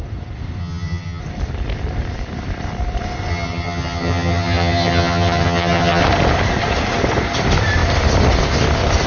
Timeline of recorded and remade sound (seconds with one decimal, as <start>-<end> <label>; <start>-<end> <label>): 0.0-0.6 recorded; 0.6-1.2 remade; 1.2-3.3 recorded; 3.3-6.0 remade; 6.0-9.1 recorded